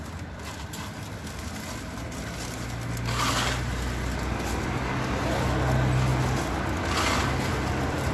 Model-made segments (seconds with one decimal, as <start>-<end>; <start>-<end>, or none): none